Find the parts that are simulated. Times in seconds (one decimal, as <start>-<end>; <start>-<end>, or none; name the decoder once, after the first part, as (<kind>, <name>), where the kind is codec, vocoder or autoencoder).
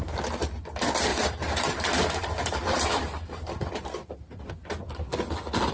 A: 1.1-4.5 (vocoder, BigVGAN v2)